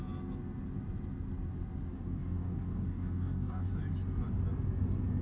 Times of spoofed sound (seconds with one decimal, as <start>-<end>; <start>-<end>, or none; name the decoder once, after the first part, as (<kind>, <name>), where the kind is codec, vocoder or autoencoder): 1.9-3.7 (codec, DAC)